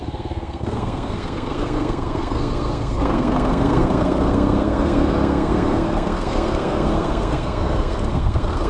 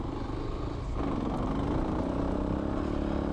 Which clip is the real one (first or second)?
second